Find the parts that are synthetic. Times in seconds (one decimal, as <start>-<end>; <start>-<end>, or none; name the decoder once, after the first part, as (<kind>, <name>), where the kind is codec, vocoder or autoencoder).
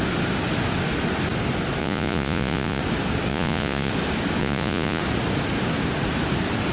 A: 1.8-2.8 (vocoder, Vocos); 3.3-3.9; 4.4-5.0